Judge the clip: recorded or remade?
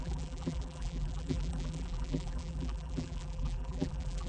remade